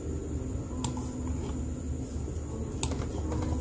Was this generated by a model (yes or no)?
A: no